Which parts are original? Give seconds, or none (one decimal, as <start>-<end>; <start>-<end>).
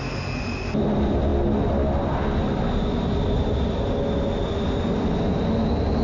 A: 0.0-6.0